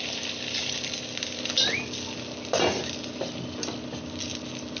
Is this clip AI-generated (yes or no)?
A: no